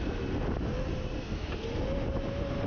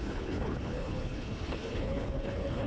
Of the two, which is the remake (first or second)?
second